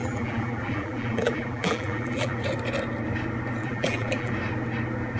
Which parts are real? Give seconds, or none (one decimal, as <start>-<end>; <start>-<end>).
2.4-3.6; 4.3-5.2